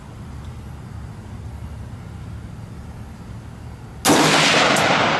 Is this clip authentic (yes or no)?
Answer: yes